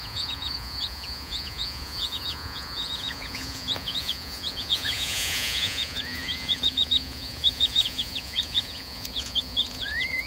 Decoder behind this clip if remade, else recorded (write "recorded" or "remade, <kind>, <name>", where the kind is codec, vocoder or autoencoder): remade, vocoder, Vocos